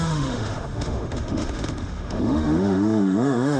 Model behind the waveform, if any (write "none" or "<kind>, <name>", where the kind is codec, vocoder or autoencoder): autoencoder, DAC-VAE